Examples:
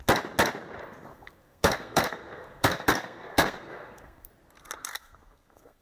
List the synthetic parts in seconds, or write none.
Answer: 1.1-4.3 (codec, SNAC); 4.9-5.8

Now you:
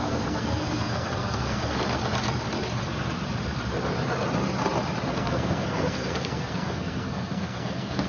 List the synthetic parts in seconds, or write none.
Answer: 0.0-2.0 (codec, SNAC); 5.1-8.1

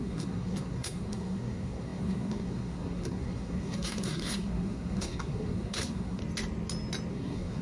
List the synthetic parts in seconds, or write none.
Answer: 0.0-6.2 (codec, SNAC); 7.1-7.6